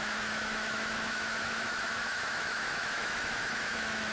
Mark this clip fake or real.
fake